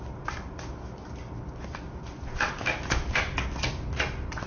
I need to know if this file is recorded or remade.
recorded